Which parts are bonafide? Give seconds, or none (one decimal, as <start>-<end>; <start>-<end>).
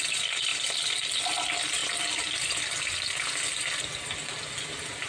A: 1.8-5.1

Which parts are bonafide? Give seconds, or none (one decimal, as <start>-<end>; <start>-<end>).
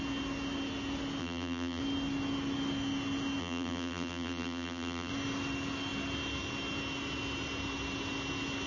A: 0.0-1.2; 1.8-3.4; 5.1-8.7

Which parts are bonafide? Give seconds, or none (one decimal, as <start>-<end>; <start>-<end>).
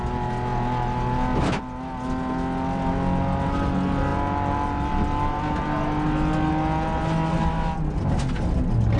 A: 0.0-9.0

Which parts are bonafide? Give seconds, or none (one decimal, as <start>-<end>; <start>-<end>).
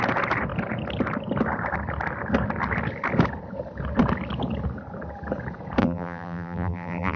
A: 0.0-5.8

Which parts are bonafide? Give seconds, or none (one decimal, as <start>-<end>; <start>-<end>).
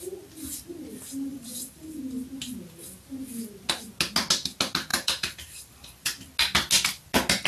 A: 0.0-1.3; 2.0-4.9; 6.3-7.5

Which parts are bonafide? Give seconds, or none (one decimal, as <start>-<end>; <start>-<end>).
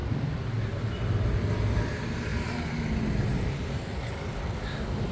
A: 0.0-3.3; 3.8-5.1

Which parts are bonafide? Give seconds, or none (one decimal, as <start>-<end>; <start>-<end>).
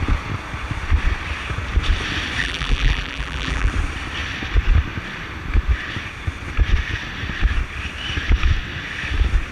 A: 0.0-2.4; 3.7-9.5